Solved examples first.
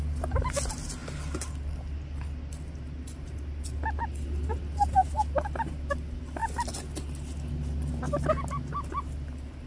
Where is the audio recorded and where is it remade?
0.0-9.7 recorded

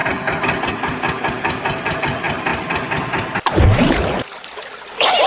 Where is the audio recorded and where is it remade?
0.0-5.3 recorded

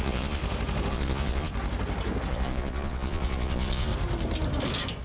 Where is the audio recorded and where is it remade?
0.0-0.4 remade; 0.4-0.9 recorded; 0.9-1.5 remade; 1.5-2.3 recorded; 2.3-3.9 remade; 3.9-5.0 recorded

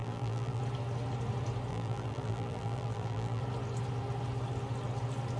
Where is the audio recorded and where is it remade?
0.0-0.6 remade; 0.6-1.7 recorded; 1.7-3.4 remade; 3.4-5.4 recorded

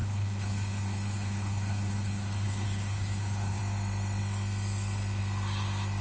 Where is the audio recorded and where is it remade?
0.0-3.6 remade; 3.6-6.0 recorded